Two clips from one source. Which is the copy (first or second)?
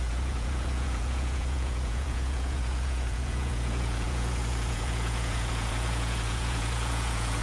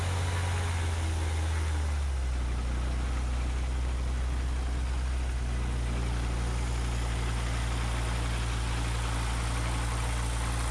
first